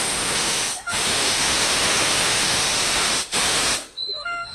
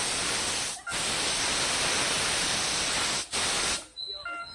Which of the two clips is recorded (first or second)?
second